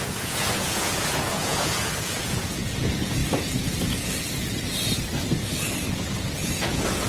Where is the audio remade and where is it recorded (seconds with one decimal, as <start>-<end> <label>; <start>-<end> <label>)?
0.0-3.2 remade; 3.2-6.2 recorded; 6.2-7.1 remade